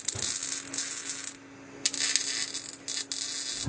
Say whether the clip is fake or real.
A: real